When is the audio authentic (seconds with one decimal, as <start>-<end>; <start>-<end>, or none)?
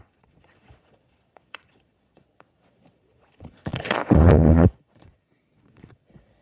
none